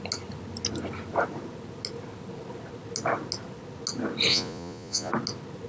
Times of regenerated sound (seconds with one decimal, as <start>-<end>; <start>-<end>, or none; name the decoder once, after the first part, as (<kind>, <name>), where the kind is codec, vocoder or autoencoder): 4.3-5.1 (vocoder, Vocos)